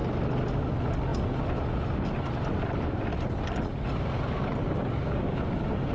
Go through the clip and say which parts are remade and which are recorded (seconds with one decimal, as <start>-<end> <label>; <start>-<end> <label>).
0.0-4.6 recorded; 4.6-5.9 remade